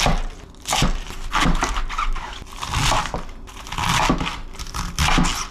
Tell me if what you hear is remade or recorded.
recorded